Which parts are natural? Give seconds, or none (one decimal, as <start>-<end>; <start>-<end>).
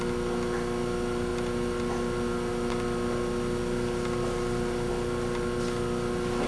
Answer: 0.0-6.5